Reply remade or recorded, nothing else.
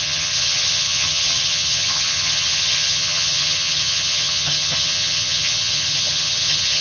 remade